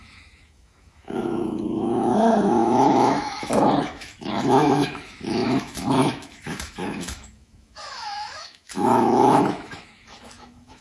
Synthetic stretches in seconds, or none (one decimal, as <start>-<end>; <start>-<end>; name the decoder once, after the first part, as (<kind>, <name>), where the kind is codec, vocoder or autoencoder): 0.0-10.8 (autoencoder, DAC-VAE)